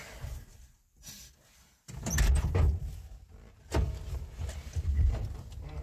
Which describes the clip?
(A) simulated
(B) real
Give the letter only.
B